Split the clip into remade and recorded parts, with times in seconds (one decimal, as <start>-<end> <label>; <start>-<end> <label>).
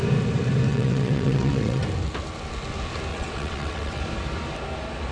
0.0-0.7 recorded; 0.7-1.8 remade; 1.8-3.1 recorded; 3.1-4.0 remade; 4.0-5.1 recorded